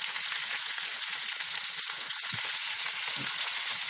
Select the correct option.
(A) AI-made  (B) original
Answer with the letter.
A